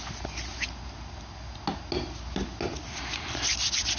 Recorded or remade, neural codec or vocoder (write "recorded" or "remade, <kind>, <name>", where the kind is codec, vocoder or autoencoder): recorded